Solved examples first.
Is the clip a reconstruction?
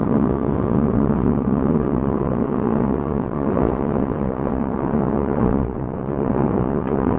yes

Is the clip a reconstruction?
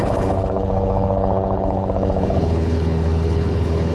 yes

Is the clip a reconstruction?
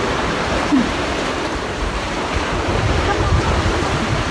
yes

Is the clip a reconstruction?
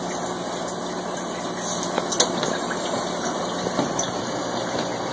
no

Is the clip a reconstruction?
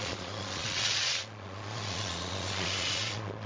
yes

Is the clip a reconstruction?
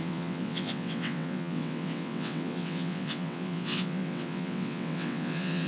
yes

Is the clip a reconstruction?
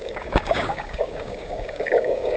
yes